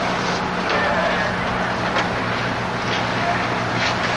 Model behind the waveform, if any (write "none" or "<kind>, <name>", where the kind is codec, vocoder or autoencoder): none